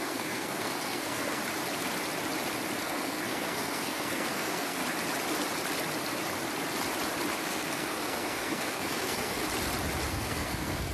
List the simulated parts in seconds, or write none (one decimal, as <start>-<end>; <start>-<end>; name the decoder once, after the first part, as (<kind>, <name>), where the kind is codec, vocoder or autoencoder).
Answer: 0.0-1.4 (codec, SNAC); 2.8-4.8; 7.4-9.4; 10.1-10.9